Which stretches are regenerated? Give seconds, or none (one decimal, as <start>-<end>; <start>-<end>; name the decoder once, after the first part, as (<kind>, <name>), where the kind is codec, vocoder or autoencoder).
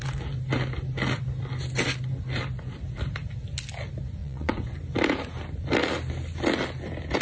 4.2-4.8 (vocoder, Vocos)